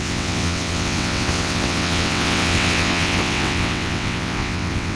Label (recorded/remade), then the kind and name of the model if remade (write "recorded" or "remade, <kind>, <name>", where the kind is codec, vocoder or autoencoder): remade, vocoder, WaveNeXt